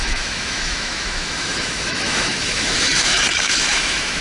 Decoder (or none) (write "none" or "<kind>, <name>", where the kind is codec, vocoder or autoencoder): autoencoder, DAC-VAE